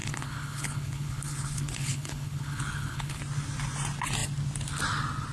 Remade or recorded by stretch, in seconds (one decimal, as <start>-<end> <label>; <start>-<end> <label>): 0.0-3.2 remade; 3.2-5.3 recorded